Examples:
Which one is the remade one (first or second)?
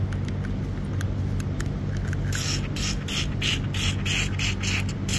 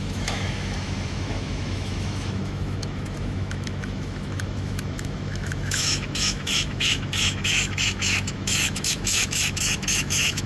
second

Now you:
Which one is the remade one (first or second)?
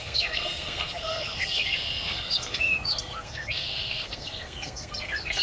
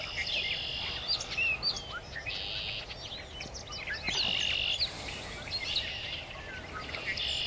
first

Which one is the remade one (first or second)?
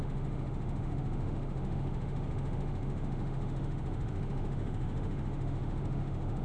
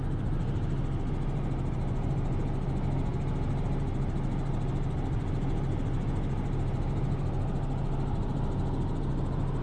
first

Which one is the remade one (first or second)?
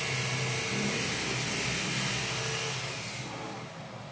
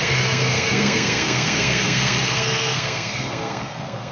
second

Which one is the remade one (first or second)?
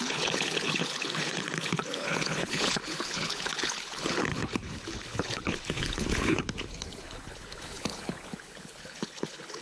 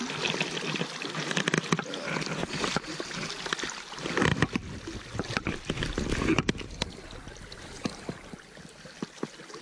first